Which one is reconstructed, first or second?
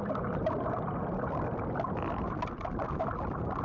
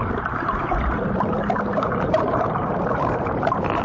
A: second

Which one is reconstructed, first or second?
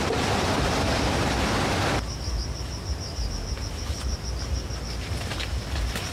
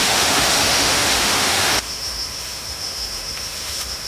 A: second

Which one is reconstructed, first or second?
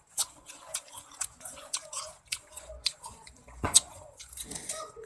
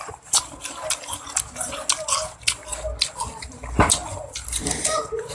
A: first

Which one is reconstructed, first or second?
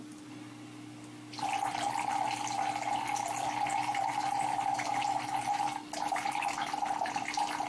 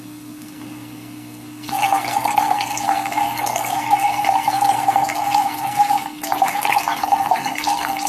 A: second